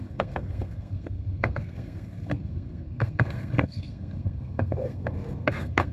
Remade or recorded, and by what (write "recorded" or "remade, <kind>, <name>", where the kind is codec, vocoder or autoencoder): remade, codec, SNAC